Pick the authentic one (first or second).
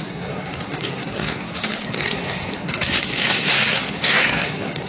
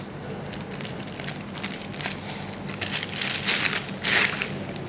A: second